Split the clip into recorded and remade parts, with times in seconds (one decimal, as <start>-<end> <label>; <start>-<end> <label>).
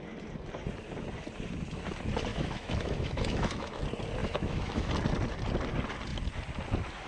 0.0-2.3 recorded; 2.3-3.8 remade; 3.8-4.2 recorded; 4.2-4.9 remade; 4.9-7.1 recorded